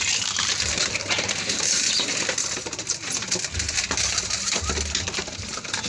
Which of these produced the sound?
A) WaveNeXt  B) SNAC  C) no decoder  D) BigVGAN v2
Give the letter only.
D